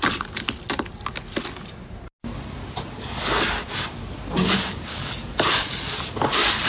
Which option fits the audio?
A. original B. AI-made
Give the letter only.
A